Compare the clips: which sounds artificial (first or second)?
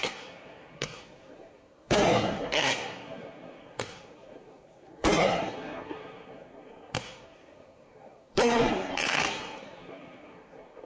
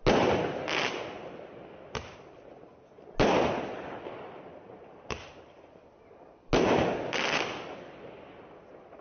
first